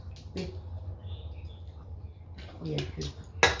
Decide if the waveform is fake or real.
real